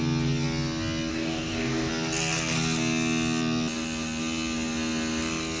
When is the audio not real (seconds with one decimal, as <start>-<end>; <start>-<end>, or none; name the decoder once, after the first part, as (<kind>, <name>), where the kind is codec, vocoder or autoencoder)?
1.1-1.9 (codec, DAC)